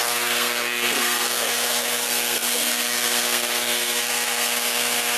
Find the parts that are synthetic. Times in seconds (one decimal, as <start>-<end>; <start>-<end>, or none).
0.0-5.2